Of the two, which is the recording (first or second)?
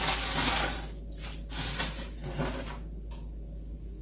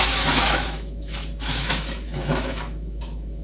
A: first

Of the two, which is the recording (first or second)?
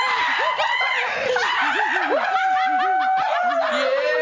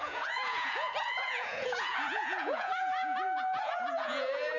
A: first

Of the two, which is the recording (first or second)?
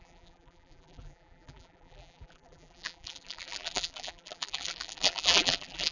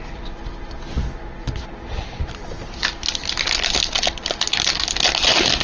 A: second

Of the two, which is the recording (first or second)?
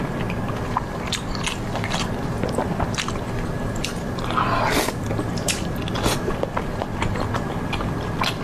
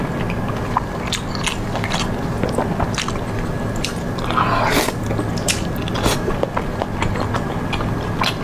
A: second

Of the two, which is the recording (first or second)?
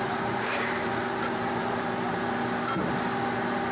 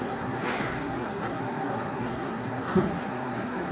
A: first